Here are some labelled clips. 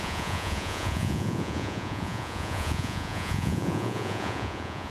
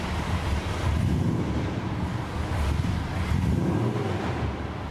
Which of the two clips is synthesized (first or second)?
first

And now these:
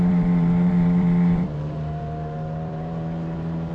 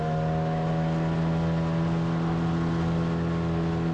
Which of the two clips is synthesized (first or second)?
first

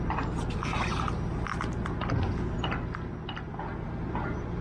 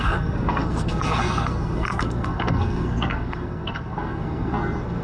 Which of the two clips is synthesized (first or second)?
second